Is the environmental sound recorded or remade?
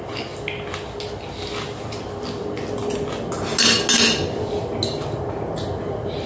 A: recorded